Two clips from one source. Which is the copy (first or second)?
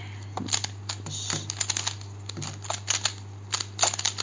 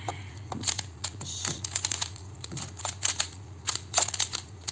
second